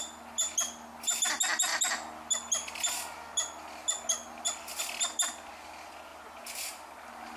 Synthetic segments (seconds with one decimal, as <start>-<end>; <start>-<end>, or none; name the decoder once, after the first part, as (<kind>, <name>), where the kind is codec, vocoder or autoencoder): none